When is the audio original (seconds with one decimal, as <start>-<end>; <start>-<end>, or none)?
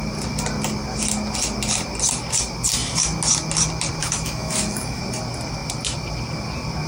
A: 0.0-4.0; 5.0-6.9